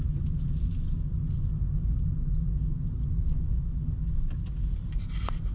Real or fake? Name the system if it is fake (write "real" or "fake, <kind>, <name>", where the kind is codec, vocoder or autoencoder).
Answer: real